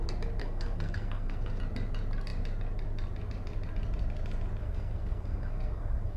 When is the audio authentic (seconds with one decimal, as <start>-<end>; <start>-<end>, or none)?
0.0-0.4; 1.6-4.6